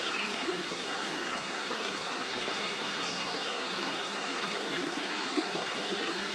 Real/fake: fake